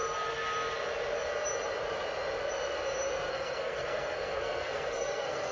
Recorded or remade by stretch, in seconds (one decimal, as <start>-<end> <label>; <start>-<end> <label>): 0.0-3.3 recorded; 3.3-5.5 remade